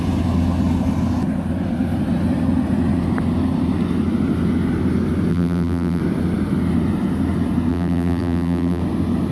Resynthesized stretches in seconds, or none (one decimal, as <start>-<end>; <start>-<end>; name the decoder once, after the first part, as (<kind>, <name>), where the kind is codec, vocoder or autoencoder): 5.3-6.0 (vocoder, BigVGAN v2); 7.7-8.8